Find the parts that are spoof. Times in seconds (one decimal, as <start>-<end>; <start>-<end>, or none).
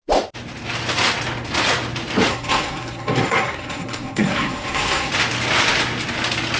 2.3-5.1